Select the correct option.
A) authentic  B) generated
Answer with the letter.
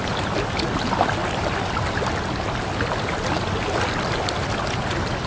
A